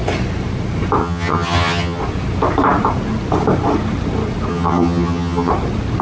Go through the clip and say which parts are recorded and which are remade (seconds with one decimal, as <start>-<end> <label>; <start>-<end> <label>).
0.0-1.0 recorded; 1.0-2.0 remade; 2.0-4.5 recorded; 4.5-5.5 remade; 5.5-6.0 recorded

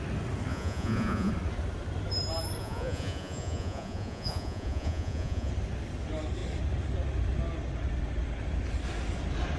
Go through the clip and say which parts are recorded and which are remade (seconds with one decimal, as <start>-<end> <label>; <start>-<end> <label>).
0.0-0.5 recorded; 0.5-1.3 remade; 1.3-2.6 recorded; 2.6-5.5 remade; 5.5-9.6 recorded

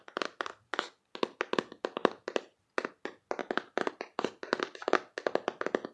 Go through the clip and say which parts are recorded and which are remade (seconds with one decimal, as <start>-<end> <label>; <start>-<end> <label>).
0.0-5.9 recorded

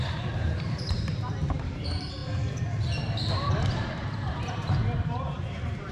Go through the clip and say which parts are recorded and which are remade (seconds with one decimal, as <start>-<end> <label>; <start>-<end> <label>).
0.0-2.2 remade; 2.2-3.3 recorded; 3.3-5.9 remade

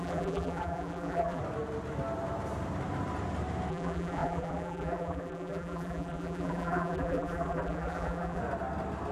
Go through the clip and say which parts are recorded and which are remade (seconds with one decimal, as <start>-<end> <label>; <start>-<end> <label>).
0.0-1.4 remade; 1.4-3.7 recorded; 3.7-8.4 remade; 8.4-9.1 recorded

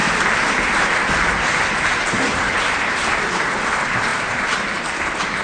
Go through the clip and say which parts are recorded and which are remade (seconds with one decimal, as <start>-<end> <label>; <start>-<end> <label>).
0.0-4.1 remade; 4.1-4.8 recorded; 4.8-5.4 remade